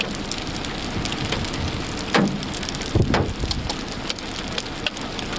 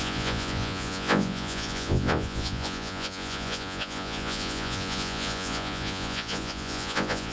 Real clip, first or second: first